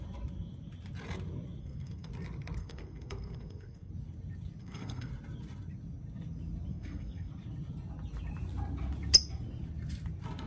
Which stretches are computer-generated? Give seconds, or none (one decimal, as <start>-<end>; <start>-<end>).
1.6-2.1; 2.6-3.9; 4.6-5.1; 6.7-7.3